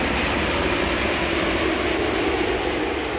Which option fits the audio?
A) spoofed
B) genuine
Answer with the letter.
B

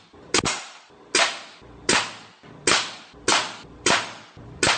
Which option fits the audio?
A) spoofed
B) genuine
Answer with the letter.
B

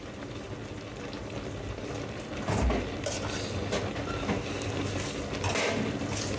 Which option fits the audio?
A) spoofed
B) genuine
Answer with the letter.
B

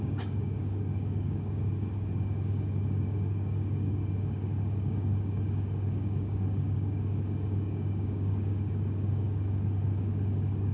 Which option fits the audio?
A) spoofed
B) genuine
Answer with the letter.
A